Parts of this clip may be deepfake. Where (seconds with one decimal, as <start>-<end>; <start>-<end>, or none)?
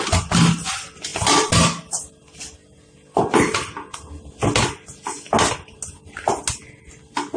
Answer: none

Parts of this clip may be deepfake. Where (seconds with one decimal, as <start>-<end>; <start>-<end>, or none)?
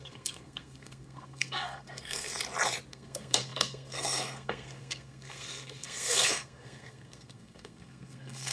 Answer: 0.0-2.3; 2.9-8.5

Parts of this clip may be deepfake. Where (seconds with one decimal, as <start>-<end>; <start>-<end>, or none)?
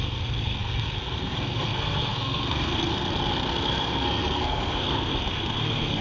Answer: 0.0-6.0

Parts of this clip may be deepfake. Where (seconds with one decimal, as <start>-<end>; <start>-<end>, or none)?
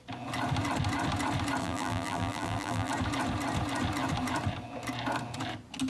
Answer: 1.6-2.9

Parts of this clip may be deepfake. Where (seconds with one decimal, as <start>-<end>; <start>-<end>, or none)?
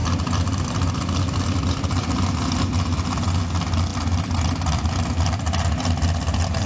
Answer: 0.0-2.3; 3.9-6.7